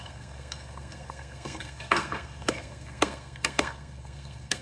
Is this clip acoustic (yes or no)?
no